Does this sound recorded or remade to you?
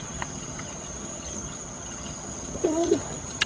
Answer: remade